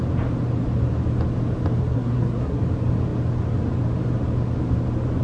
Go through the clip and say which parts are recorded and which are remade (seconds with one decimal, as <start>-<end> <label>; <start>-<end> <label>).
0.0-1.8 recorded; 1.8-2.6 remade; 2.6-5.2 recorded